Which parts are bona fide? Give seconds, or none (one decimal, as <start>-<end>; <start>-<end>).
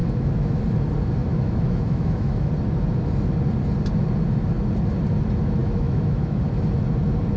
0.6-1.2; 2.5-5.6; 6.4-7.4